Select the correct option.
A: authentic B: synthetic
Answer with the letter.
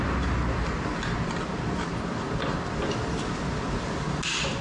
A